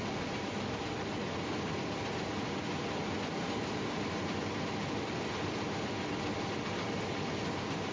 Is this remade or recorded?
recorded